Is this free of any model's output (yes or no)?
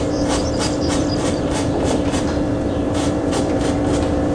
no